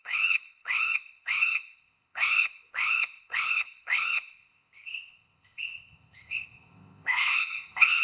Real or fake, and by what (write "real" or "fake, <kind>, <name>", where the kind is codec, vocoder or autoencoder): fake, codec, ZipCodec